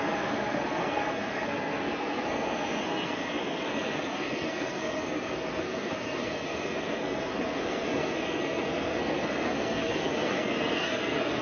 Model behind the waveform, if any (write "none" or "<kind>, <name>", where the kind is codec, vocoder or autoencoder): codec, SNAC